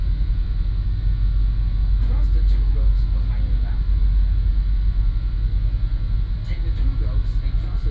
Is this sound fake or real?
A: real